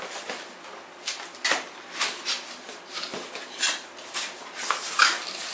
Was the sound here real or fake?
real